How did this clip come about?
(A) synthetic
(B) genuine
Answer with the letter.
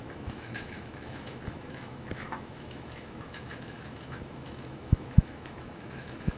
A